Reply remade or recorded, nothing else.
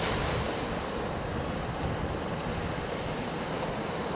recorded